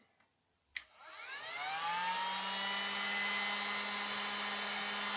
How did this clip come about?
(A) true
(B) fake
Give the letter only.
A